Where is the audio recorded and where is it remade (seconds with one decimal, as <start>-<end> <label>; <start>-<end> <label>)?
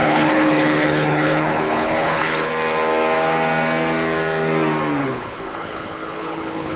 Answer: 0.0-2.5 remade; 2.5-5.0 recorded; 5.0-6.8 remade